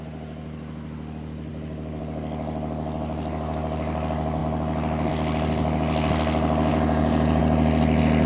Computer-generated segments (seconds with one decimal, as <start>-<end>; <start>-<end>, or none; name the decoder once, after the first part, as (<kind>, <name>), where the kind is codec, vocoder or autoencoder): 6.7-7.4 (vocoder, Vocos)